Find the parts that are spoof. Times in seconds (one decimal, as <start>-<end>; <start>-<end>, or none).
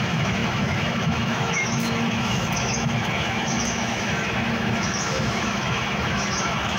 0.0-6.8